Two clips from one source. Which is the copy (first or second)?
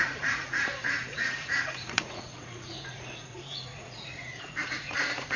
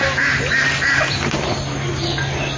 first